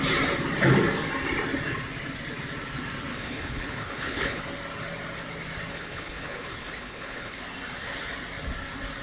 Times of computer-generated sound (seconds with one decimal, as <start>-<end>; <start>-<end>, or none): 3.1-4.4; 5.7-7.4